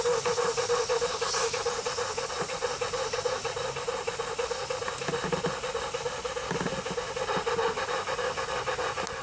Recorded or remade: recorded